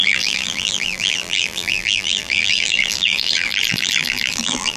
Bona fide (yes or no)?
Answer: no